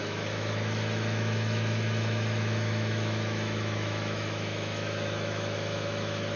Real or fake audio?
fake